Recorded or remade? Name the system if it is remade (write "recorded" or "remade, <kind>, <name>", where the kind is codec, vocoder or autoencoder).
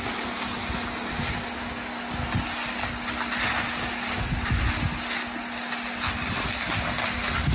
recorded